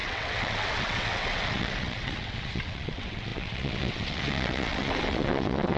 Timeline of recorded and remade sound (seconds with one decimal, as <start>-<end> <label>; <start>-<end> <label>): 0.0-5.8 remade